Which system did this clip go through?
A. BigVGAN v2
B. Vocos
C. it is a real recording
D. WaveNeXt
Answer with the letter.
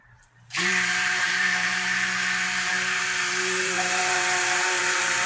A